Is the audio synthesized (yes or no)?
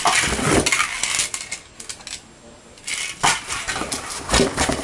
no